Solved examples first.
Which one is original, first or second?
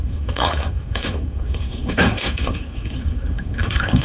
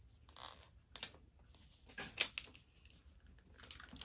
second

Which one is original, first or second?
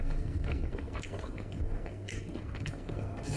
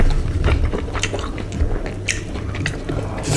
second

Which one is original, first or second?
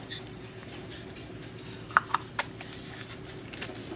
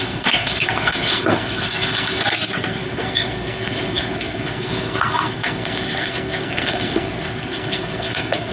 first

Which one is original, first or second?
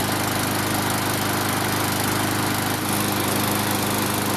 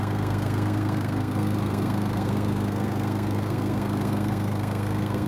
first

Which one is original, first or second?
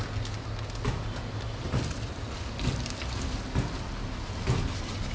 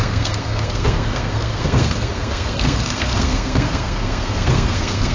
first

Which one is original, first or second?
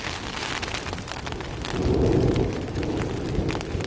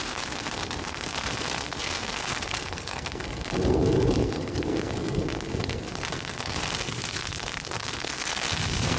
first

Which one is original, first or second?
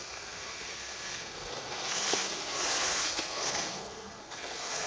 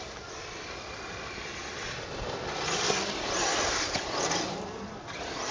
second